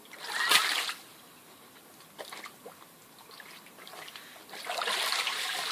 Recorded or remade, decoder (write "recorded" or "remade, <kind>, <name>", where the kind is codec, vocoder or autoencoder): recorded